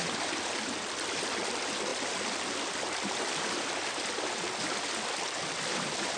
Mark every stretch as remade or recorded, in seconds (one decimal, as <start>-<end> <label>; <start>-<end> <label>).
0.0-6.2 recorded